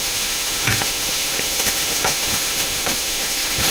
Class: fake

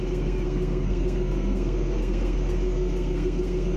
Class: fake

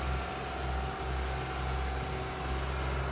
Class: real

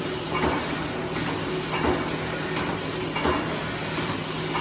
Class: real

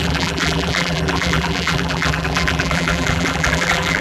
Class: fake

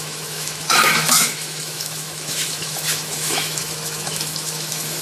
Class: fake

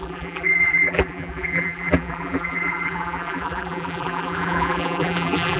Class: fake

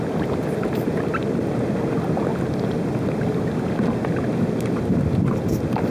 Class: real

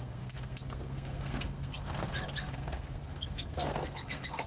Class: fake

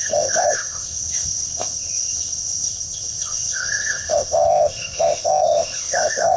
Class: fake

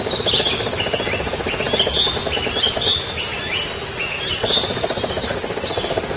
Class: real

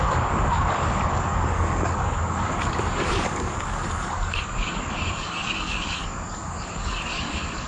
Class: fake